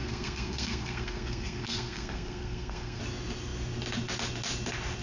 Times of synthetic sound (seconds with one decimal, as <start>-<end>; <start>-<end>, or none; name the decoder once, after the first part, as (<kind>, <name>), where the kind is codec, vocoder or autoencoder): 0.0-3.0 (codec, SNAC)